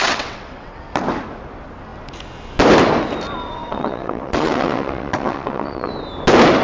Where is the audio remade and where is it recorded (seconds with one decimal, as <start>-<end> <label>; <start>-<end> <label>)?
0.0-0.8 remade; 0.8-3.6 recorded; 3.6-5.9 remade; 5.9-6.6 recorded